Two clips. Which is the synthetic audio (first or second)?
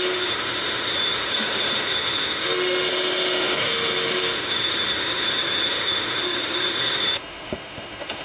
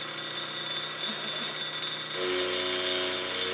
first